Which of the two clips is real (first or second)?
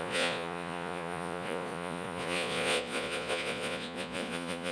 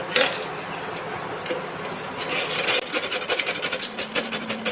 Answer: second